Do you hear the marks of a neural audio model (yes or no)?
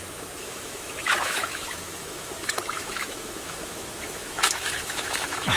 yes